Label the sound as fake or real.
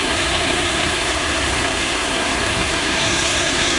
fake